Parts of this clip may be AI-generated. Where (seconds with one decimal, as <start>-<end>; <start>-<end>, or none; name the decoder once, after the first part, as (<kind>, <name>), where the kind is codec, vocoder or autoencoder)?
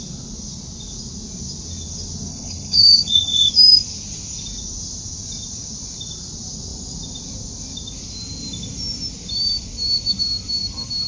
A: 2.3-3.5 (codec, HILCodec)